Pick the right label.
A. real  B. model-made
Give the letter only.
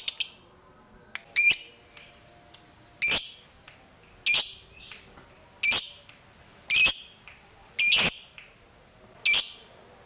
A